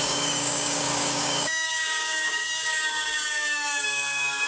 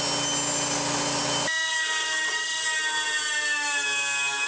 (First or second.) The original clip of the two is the second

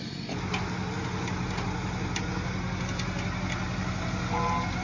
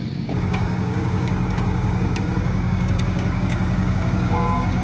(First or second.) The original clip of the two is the first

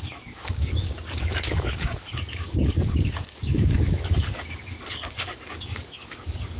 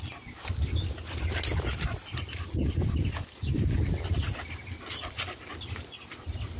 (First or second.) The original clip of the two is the second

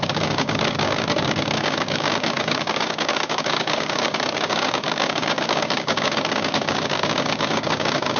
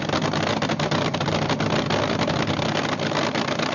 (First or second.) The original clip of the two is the second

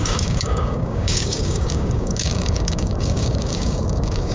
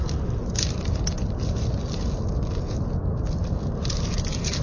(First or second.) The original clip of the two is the second